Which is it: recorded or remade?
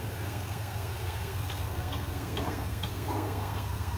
remade